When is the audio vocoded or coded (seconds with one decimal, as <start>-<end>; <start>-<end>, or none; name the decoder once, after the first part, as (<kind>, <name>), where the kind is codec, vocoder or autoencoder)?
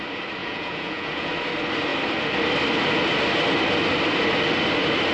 0.4-1.3 (vocoder, Vocos)